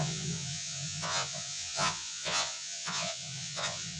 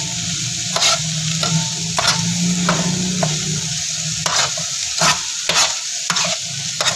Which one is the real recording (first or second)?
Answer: second